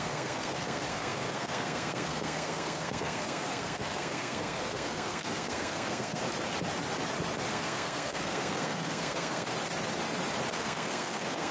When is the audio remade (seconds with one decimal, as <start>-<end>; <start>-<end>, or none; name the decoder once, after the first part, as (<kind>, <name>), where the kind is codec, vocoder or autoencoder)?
0.0-6.2 (codec, SNAC); 7.5-9.5; 10.5-11.5